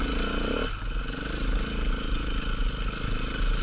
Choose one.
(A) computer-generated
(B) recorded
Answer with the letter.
B